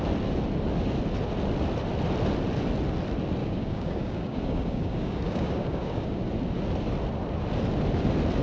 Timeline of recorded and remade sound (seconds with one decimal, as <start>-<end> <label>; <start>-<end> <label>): 0.0-3.4 recorded; 3.4-6.2 remade; 6.2-8.4 recorded